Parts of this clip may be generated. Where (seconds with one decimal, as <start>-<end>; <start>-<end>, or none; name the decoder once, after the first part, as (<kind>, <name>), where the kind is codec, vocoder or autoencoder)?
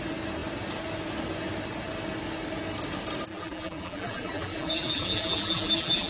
3.3-6.1 (vocoder, BigVGAN v2)